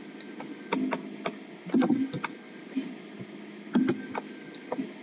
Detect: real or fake real